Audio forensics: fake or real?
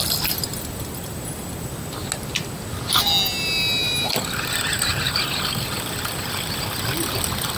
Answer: real